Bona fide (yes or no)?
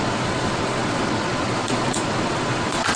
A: no